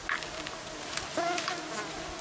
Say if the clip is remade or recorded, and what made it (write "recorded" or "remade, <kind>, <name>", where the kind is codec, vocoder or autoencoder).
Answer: recorded